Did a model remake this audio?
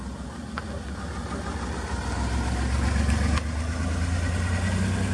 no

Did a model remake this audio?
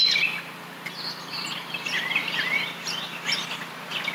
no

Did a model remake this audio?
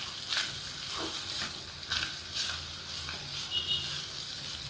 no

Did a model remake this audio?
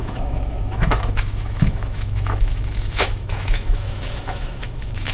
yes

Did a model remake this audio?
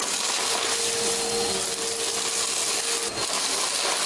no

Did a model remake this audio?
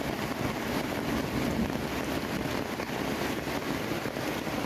no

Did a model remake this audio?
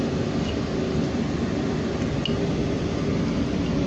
no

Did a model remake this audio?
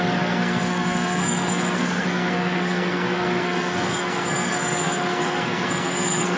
yes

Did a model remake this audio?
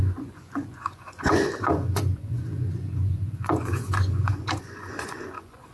yes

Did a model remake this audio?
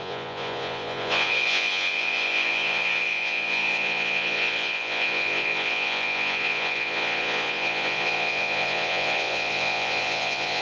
yes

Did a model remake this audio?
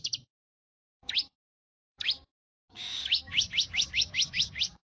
yes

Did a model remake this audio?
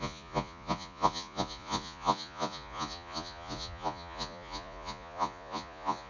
yes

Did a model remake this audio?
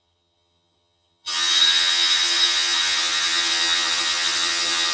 yes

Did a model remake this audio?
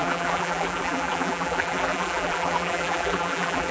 yes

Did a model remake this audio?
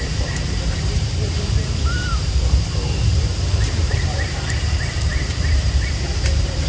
yes